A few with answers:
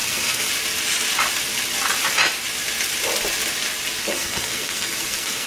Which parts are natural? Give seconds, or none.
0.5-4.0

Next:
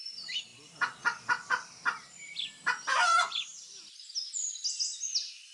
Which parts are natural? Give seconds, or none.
0.0-5.5

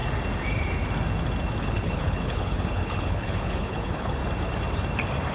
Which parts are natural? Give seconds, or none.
0.0-1.6; 4.2-5.3

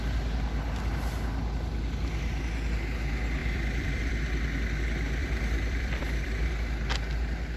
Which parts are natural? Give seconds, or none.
0.0-3.4; 4.1-5.2; 6.5-7.6

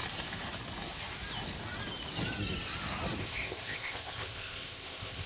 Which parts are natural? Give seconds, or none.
0.0-3.2